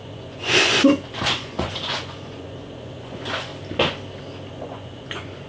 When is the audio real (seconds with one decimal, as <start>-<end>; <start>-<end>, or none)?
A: 3.5-4.5

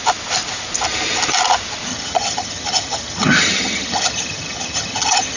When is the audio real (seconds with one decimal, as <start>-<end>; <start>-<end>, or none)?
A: 0.0-1.9

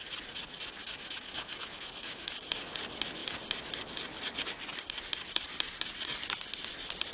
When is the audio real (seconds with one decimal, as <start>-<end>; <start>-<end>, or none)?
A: 0.0-0.8; 2.5-7.1

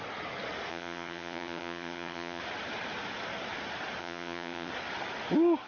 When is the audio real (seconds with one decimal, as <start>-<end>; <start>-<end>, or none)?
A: 0.0-0.7; 2.4-4.0; 4.7-5.7

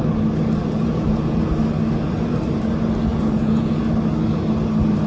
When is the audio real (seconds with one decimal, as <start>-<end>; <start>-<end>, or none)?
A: 0.0-0.6; 1.5-3.1; 3.9-5.1

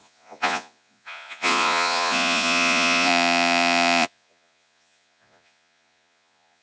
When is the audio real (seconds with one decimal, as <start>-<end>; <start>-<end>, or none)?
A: none

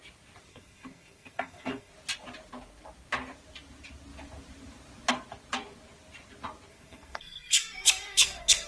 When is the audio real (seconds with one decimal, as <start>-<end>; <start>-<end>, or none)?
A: 0.0-0.5; 1.9-6.7